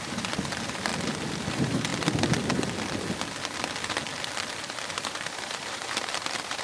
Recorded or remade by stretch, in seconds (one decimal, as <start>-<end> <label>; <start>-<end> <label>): 0.0-0.9 remade; 0.9-1.5 recorded; 1.5-1.9 remade; 1.9-4.9 recorded; 4.9-6.6 remade